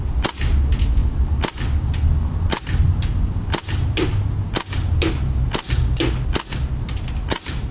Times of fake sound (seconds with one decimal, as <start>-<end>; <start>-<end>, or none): none